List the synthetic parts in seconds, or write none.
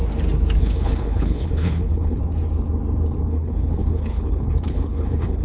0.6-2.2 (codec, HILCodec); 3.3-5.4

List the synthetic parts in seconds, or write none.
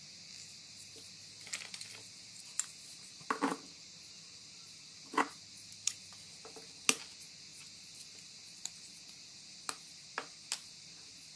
none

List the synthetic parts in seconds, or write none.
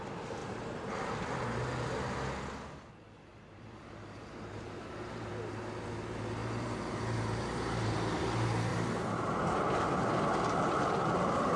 3.3-5.3 (vocoder, BigVGAN v2); 6.4-8.2; 8.7-9.9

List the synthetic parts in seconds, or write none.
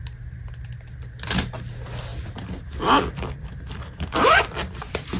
none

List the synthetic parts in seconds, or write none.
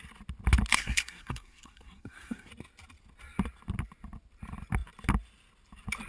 0.7-2.5 (codec, SNAC)